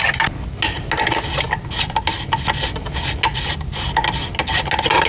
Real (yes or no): yes